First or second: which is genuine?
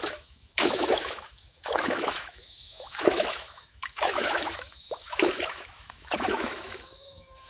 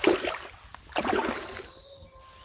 second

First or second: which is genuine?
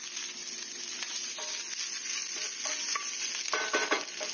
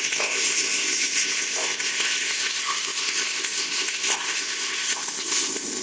first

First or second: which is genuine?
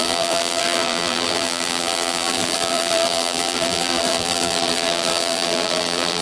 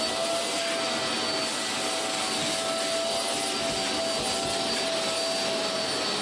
second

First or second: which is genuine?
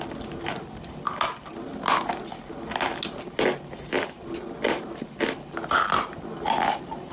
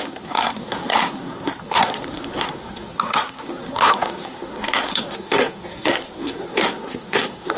first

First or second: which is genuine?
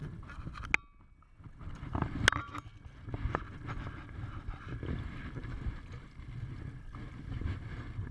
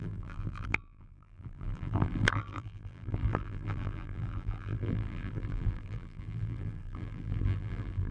first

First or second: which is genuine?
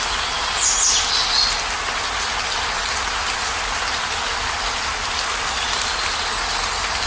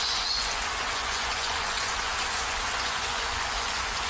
first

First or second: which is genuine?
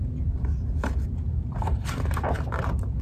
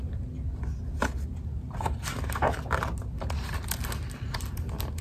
second